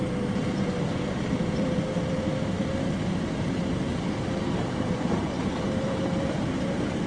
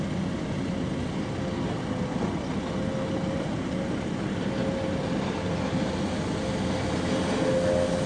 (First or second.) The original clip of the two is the second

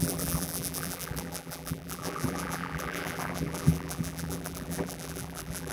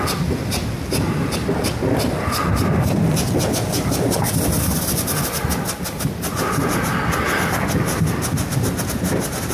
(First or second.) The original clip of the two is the second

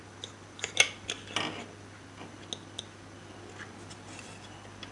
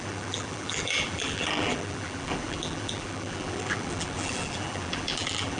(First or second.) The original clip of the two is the first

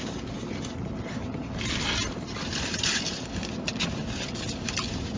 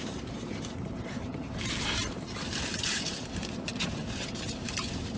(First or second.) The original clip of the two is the first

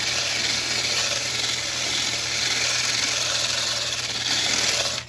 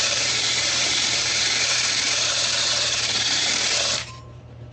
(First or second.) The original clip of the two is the first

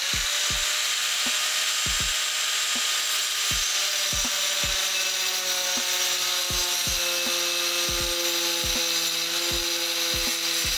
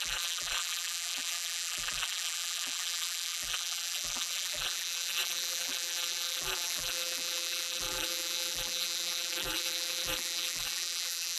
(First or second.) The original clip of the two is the first